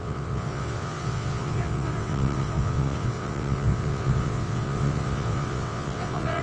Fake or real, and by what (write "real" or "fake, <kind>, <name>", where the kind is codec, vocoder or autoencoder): fake, vocoder, WaveNeXt